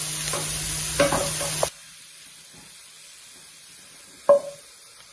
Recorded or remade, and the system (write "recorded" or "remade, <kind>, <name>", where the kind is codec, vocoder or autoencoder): recorded